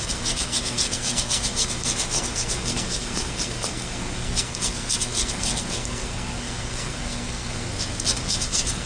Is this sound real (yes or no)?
no